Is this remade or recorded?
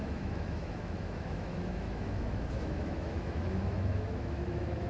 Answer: remade